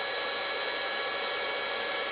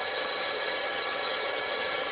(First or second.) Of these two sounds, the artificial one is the second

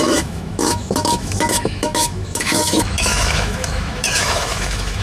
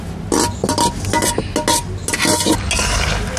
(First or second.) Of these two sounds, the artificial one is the first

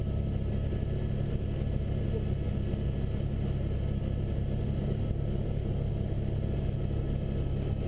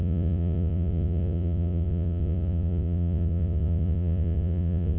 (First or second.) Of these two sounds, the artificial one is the second